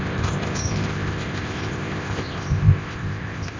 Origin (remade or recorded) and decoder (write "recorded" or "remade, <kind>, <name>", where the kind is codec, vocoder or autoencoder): remade, codec, ZipCodec